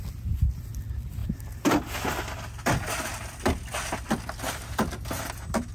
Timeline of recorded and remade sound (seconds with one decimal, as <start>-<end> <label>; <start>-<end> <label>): 0.0-5.7 recorded